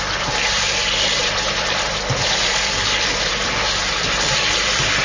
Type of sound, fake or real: fake